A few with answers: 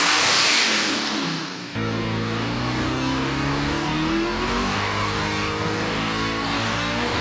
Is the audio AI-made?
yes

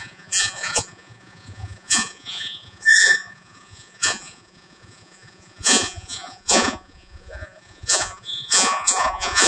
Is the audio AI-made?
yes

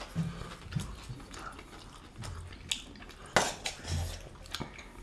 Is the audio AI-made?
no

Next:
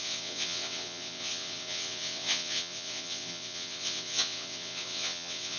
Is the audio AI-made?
yes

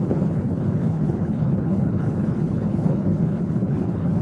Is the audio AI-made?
yes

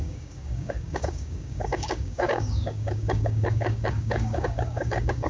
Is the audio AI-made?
yes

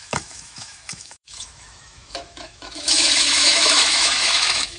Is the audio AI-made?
yes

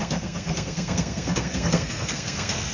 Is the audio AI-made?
yes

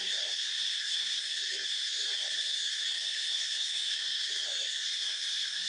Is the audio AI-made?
yes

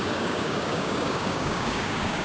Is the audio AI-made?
yes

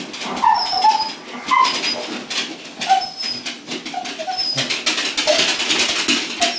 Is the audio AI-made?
no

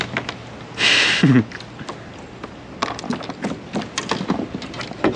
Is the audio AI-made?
no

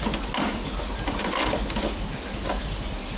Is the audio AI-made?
no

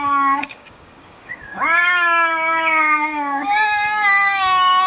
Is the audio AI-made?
yes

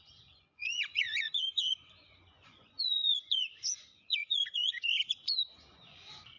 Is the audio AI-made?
yes